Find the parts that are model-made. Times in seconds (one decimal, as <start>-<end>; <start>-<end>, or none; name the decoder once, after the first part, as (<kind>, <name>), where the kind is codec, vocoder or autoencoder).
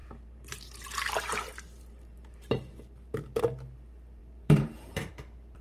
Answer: 0.0-3.4 (vocoder, BigVGAN v2); 4.2-5.1